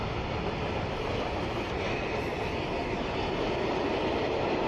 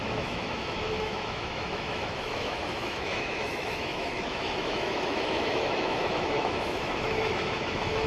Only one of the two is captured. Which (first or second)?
first